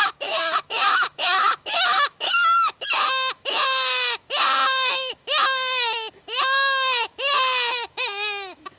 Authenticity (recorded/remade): remade